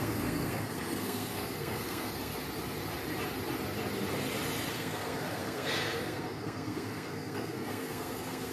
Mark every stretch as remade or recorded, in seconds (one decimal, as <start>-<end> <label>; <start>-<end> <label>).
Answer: 0.0-2.3 remade; 2.3-4.7 recorded; 4.7-8.5 remade